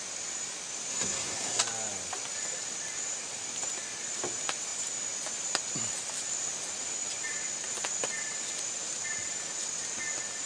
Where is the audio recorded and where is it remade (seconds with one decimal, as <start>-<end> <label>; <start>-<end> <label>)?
0.0-0.9 recorded; 0.9-1.6 remade; 1.6-10.5 recorded